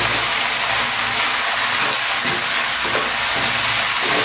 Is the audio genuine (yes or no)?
yes